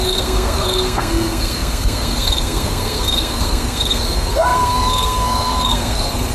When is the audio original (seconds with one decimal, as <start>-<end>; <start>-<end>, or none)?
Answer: none